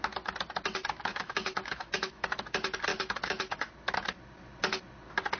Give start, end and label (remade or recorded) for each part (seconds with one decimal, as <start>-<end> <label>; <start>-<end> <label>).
0.0-1.1 recorded; 1.1-2.4 remade; 2.4-2.9 recorded; 2.9-3.7 remade; 3.7-5.4 recorded